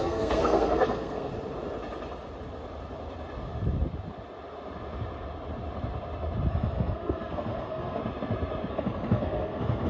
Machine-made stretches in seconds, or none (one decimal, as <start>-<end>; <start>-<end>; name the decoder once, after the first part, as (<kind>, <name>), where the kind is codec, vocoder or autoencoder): 0.0-1.3 (codec, SNAC); 6.5-8.0; 8.7-9.9